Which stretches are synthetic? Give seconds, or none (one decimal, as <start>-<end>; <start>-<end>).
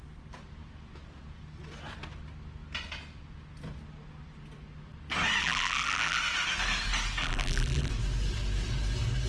5.4-6.2; 7.2-7.9